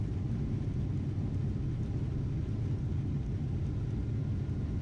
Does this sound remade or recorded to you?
recorded